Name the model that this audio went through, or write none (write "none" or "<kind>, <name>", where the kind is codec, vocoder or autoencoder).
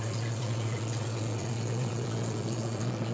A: vocoder, Vocos